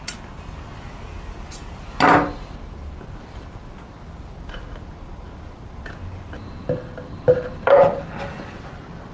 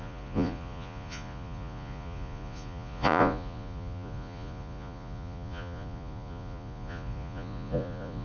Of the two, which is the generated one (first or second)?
second